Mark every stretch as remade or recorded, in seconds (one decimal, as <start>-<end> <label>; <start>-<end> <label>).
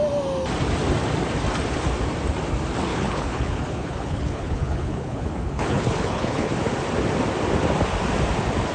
0.0-2.9 recorded; 2.9-6.5 remade; 6.5-8.7 recorded